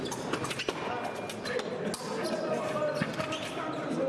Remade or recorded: recorded